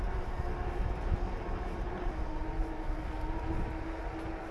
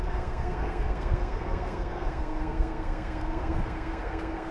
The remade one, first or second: second